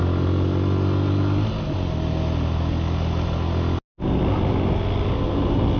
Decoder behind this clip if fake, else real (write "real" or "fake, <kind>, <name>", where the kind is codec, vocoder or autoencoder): real